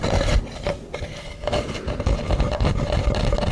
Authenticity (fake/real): real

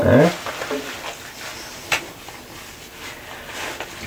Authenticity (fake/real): real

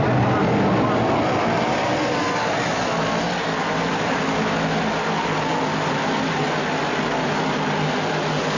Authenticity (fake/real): real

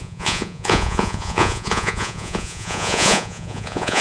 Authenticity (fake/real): fake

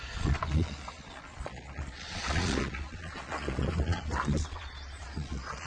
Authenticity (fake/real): fake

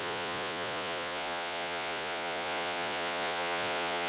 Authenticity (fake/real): fake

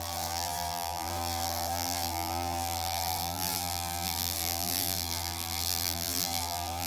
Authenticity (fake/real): fake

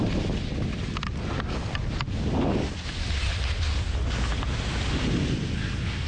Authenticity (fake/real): real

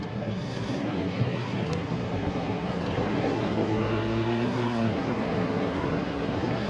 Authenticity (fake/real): fake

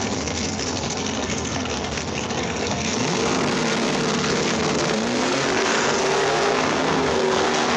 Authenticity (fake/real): fake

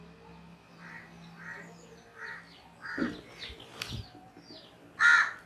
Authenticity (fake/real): real